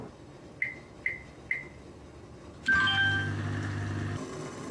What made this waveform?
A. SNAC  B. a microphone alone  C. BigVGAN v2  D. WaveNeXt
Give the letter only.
B